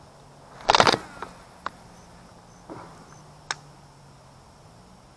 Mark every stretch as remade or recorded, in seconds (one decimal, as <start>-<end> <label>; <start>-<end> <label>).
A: 0.0-5.2 recorded